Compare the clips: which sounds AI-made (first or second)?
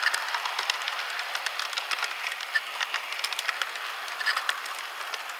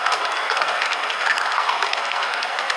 second